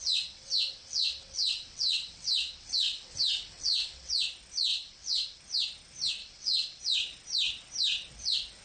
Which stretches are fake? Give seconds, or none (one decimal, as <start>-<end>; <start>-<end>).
0.0-4.1; 4.7-5.4; 6.2-6.8